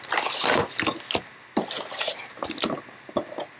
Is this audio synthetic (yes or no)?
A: no